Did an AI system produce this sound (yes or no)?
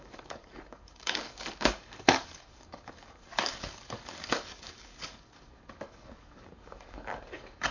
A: yes